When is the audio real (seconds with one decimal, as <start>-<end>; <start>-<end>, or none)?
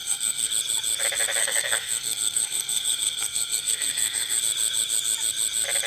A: 0.5-1.4; 4.4-5.9